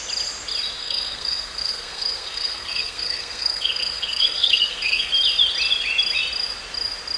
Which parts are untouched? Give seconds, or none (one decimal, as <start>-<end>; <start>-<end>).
0.0-0.8; 5.1-7.2